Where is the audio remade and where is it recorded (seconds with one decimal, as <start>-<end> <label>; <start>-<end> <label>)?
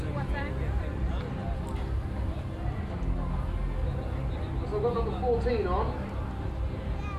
0.0-7.2 recorded